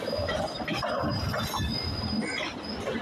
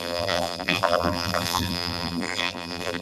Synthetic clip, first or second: second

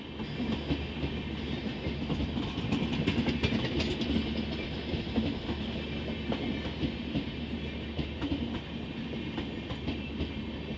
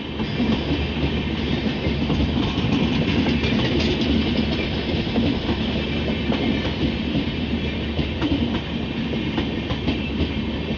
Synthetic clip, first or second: second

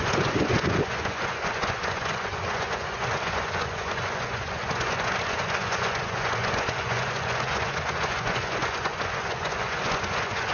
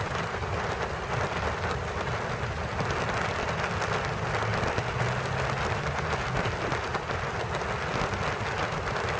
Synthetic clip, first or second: first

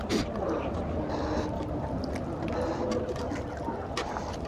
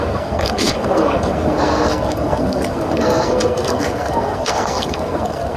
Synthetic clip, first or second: second